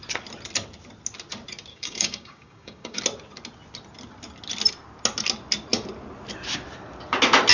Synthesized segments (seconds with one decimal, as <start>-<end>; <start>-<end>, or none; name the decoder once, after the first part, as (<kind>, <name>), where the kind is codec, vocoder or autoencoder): 1.7-3.0 (codec, DAC)